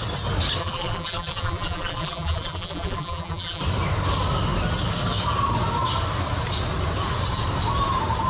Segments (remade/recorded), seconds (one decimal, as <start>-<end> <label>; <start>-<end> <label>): 0.0-0.6 recorded; 0.6-3.6 remade; 3.6-8.3 recorded